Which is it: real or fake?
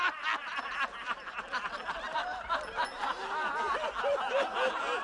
real